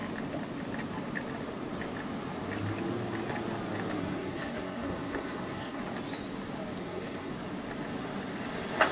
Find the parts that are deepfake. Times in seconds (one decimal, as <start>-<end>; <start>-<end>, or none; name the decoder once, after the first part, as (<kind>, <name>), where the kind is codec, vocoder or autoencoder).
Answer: 4.0-5.8 (codec, SNAC); 6.8-7.3